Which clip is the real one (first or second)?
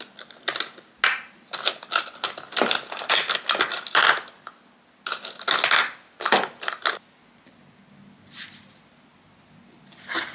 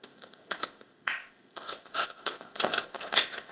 first